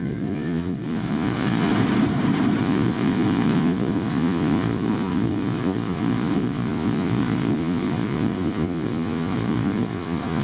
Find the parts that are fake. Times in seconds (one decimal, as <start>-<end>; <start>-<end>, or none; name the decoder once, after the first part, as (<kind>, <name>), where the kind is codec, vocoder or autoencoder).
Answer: 0.0-1.7 (vocoder, Vocos); 2.6-10.4